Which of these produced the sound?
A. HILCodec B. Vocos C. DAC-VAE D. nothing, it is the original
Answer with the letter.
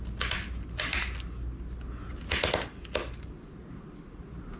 D